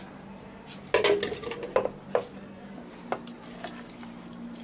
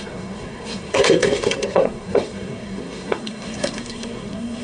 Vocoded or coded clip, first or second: second